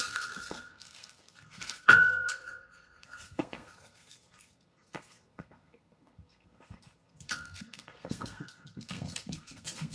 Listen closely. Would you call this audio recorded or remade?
remade